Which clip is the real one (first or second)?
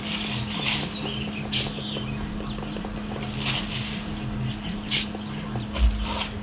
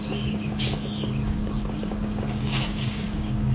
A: first